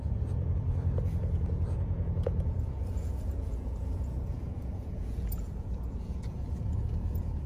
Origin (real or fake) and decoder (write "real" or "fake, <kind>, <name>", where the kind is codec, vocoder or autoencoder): fake, vocoder, Vocos